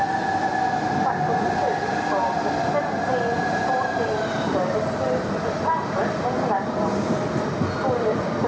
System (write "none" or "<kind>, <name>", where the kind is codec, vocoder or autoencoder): none